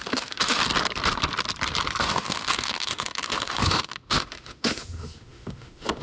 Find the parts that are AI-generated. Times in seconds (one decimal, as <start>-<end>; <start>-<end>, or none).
0.0-0.6; 2.0-6.0